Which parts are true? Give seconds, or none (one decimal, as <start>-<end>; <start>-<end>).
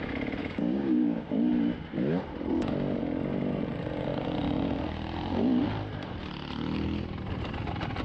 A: 0.0-0.4; 1.5-8.0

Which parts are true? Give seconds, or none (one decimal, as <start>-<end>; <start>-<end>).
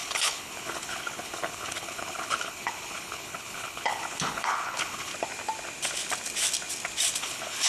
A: 5.1-7.2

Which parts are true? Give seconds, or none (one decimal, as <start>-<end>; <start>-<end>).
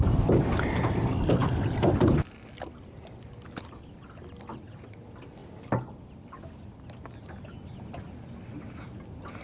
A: 0.0-9.4